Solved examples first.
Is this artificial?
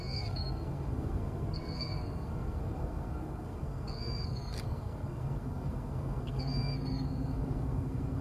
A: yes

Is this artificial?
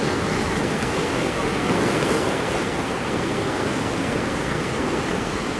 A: yes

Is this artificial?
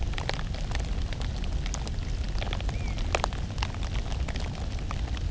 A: no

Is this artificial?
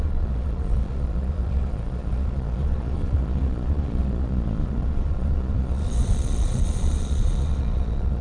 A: yes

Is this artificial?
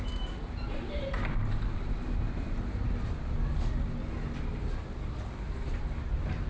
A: no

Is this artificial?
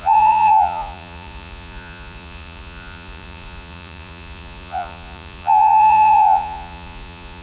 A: yes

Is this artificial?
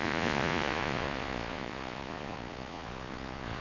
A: yes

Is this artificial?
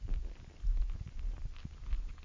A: no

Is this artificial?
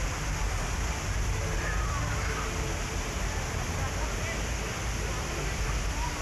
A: no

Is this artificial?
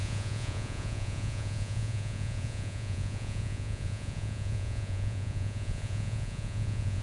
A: yes